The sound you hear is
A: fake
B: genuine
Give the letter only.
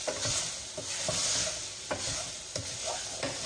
B